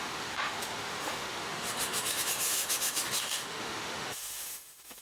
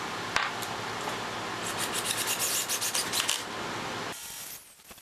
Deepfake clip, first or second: first